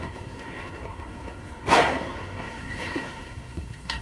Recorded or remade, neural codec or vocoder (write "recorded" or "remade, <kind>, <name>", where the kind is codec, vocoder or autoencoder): remade, codec, SNAC